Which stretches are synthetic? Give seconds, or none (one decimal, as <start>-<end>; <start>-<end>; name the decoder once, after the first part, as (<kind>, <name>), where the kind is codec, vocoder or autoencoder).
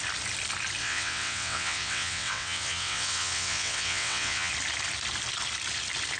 0.8-4.5 (vocoder, WaveNeXt)